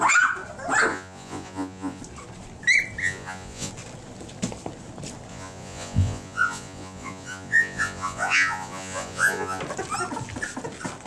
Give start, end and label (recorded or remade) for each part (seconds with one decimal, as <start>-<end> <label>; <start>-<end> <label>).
0.0-0.9 recorded; 0.9-2.0 remade; 2.0-3.0 recorded; 3.0-3.7 remade; 3.7-5.3 recorded; 5.3-9.6 remade; 9.6-11.1 recorded